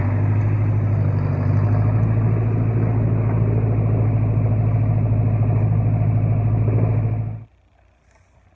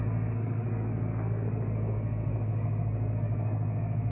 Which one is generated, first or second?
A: second